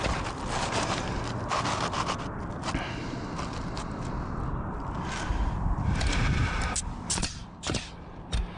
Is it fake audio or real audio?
real